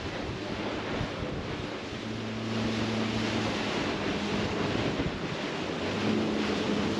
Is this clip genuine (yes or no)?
yes